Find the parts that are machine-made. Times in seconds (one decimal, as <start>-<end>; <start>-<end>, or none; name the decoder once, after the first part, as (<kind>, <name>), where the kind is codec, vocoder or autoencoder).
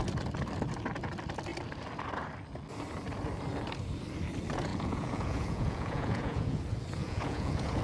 4.7-6.6 (vocoder, Vocos); 7.0-7.8